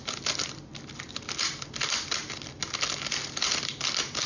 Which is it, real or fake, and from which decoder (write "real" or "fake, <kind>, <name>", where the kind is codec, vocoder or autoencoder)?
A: real